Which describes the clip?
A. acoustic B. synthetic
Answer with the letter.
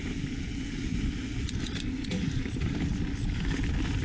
A